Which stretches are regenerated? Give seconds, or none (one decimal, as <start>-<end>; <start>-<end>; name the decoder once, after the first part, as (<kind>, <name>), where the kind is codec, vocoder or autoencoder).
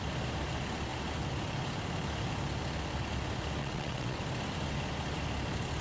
3.6-4.2 (vocoder, WaveNeXt)